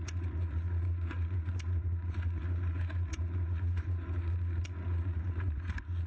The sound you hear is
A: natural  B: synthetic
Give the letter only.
B